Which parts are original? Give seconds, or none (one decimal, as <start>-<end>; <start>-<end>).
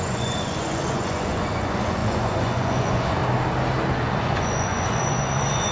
3.2-3.9